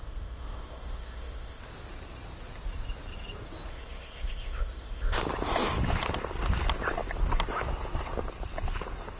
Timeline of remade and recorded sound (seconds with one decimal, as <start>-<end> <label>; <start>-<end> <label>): 0.0-1.6 remade; 1.6-3.7 recorded; 3.7-5.2 remade; 5.2-9.2 recorded